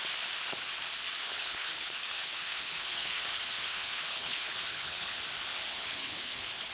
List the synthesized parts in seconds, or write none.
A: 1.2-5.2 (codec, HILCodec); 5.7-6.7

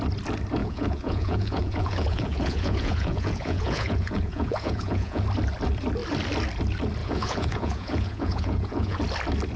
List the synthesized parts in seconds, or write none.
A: 0.6-5.2 (vocoder, Vocos); 7.0-9.0